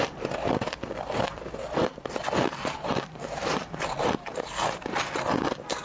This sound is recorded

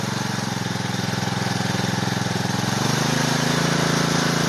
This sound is remade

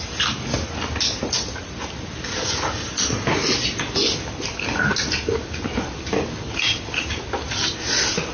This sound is recorded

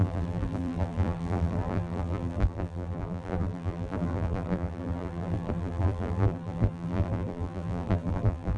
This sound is remade